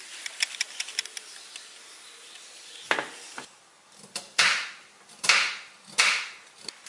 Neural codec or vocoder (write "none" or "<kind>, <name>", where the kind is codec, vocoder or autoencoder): none